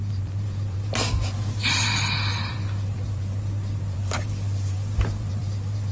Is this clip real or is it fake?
fake